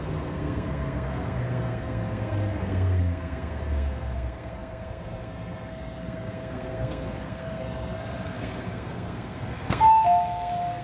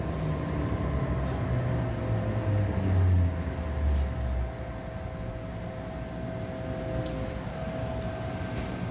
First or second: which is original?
second